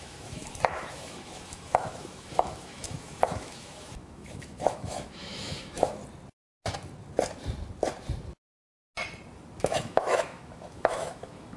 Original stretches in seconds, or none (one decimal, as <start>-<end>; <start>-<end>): 6.0-9.6